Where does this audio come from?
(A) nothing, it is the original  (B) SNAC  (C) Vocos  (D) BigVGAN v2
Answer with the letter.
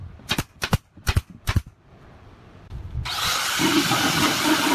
A